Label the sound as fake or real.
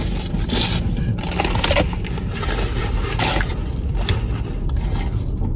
real